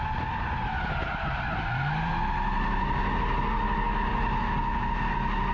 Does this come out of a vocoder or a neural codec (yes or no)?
no